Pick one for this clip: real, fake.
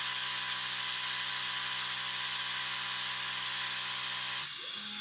real